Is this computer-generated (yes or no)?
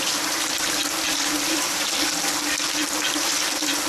yes